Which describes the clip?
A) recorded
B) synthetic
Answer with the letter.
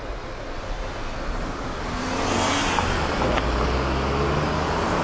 A